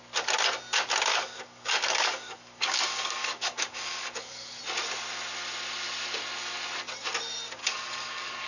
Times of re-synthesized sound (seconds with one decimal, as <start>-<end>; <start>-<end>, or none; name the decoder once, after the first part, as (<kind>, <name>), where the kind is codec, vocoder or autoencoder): 1.1-4.6 (codec, DAC); 7.6-8.5